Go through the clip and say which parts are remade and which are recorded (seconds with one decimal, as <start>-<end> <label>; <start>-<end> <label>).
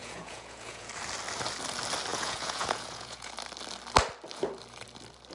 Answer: 0.0-0.9 remade; 0.9-2.1 recorded; 2.1-3.3 remade; 3.3-5.3 recorded